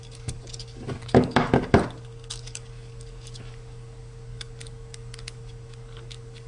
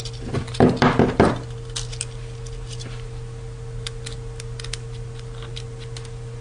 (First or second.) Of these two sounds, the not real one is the first